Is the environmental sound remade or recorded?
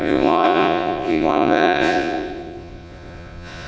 remade